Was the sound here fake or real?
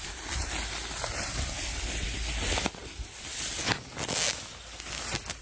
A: real